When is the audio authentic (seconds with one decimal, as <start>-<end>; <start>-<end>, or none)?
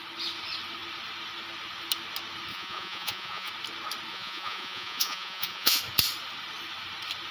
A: 0.0-2.5; 3.5-4.1; 5.8-7.3